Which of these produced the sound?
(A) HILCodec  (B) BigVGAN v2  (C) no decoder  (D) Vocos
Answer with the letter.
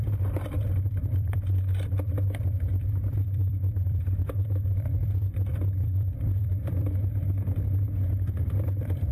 B